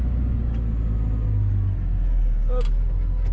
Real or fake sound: real